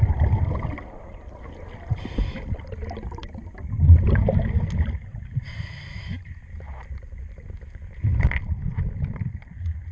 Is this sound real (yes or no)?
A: yes